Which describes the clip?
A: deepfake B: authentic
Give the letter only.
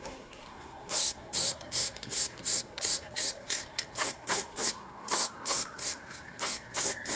A